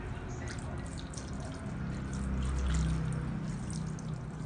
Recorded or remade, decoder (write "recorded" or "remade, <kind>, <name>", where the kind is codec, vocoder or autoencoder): recorded